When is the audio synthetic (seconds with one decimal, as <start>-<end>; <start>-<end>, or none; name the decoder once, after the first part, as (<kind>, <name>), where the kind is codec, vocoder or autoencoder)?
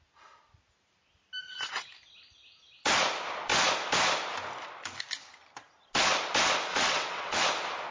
1.4-1.9 (vocoder, WaveNeXt); 6.7-7.4